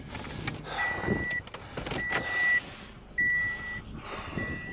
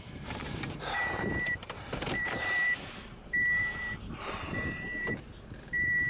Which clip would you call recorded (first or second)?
first